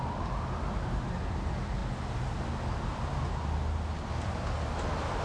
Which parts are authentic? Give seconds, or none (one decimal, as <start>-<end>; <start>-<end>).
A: 0.0-5.2